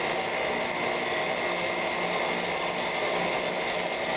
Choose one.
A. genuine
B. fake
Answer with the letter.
A